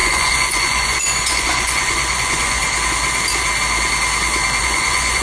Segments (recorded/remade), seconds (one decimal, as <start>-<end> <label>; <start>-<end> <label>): 0.0-2.6 remade; 2.6-4.6 recorded; 4.6-5.2 remade